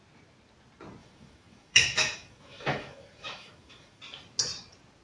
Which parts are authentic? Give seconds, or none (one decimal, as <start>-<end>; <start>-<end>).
0.0-1.0; 4.0-5.0